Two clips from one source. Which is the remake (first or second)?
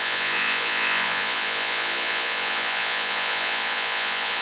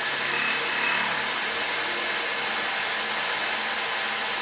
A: first